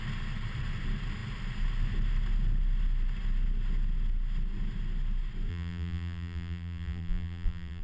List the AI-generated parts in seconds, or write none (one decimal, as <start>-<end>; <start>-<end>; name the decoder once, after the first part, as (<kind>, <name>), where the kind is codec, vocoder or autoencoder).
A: 5.5-7.8 (vocoder, BigVGAN v2)